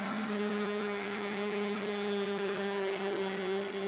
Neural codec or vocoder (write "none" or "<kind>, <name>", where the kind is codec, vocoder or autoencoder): vocoder, HiFi-GAN